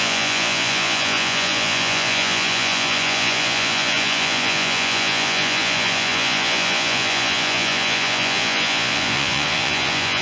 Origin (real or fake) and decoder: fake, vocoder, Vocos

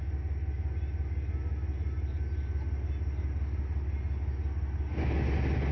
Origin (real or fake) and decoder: real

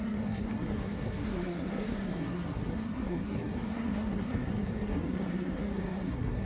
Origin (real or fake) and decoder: fake, codec, SNAC